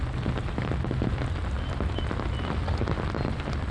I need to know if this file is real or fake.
real